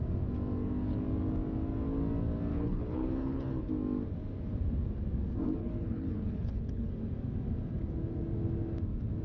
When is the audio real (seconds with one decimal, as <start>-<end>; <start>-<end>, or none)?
0.0-2.5; 3.7-5.6; 6.9-9.2